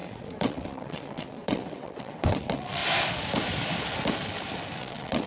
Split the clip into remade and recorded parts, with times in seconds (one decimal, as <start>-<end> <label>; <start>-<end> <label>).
0.0-2.8 remade; 2.8-4.8 recorded; 4.8-5.3 remade

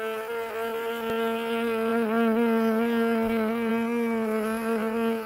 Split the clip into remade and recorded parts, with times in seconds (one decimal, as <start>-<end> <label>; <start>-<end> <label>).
0.0-5.3 recorded

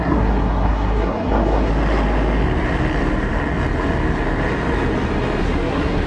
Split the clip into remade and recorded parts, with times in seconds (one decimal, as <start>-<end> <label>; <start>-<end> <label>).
0.0-1.7 remade; 1.7-5.4 recorded; 5.4-6.1 remade

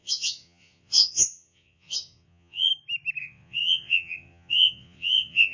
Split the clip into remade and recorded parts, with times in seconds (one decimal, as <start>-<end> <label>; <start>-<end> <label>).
0.0-2.7 remade; 2.7-3.2 recorded; 3.2-5.5 remade

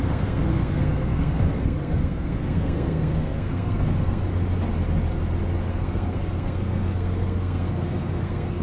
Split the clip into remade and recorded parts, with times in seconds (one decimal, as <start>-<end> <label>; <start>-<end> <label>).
0.0-4.2 remade; 4.2-5.7 recorded; 5.7-8.6 remade